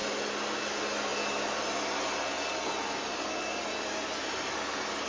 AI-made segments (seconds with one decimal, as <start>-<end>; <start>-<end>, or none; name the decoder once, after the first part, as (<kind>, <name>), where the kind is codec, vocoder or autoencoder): none

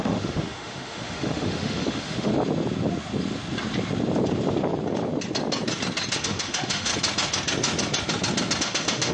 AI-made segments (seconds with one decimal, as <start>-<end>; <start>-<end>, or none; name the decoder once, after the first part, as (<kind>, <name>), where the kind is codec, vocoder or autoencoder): 0.0-2.3 (autoencoder, DAC-VAE); 6.2-6.9; 8.6-9.1

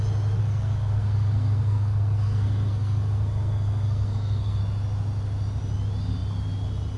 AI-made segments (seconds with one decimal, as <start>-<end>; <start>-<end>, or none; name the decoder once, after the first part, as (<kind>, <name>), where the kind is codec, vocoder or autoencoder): 0.4-4.6 (codec, SNAC)

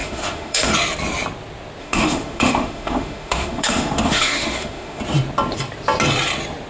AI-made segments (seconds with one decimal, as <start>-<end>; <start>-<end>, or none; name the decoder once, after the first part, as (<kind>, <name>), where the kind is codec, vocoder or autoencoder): 0.0-0.7 (autoencoder, DAC-VAE); 1.8-5.0

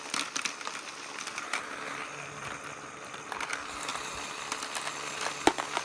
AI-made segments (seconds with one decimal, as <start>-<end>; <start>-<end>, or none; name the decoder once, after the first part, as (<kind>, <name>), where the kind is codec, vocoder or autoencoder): none

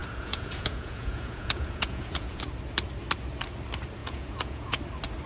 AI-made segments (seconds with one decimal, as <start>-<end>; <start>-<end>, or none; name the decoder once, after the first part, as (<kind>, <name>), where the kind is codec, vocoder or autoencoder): 0.0-2.4 (vocoder, Vocos); 4.0-4.8

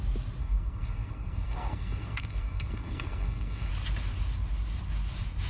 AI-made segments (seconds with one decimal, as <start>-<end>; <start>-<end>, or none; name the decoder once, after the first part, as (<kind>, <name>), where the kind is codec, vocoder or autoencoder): 0.4-3.7 (codec, SNAC)

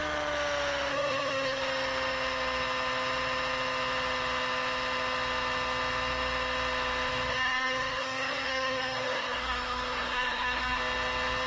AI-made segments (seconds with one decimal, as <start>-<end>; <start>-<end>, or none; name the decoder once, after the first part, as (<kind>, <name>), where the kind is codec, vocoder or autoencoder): 0.9-1.6 (codec, SNAC); 7.3-10.8